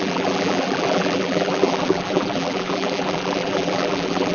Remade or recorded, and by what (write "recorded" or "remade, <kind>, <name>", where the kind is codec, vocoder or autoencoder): remade, vocoder, BigVGAN v2